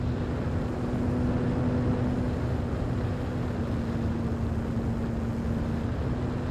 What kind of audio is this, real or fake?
real